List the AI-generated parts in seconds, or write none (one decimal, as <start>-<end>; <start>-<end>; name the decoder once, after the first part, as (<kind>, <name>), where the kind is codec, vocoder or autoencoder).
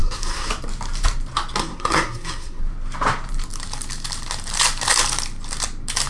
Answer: 0.0-0.5 (codec, SNAC); 1.6-2.6